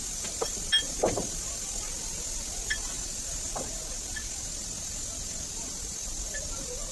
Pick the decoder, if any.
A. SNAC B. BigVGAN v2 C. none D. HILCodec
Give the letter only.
C